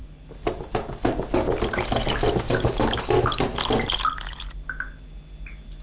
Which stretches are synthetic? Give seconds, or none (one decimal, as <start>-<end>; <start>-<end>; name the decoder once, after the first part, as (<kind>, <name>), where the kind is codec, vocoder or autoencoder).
none